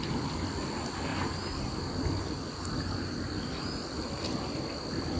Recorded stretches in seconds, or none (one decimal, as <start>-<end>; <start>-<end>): 0.0-5.2